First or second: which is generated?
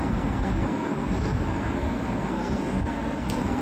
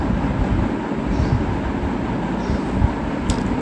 first